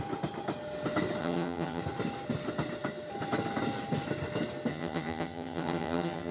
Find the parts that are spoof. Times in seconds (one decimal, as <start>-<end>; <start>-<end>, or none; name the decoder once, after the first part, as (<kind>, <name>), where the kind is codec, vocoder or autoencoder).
1.2-1.8 (vocoder, HiFi-GAN); 4.7-6.3